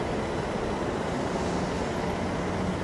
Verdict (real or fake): real